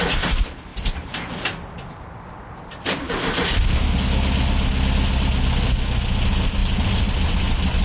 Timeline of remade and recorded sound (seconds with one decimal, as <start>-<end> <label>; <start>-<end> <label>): 0.0-0.7 recorded; 0.7-3.1 remade; 3.1-6.6 recorded; 6.6-7.3 remade; 7.3-7.8 recorded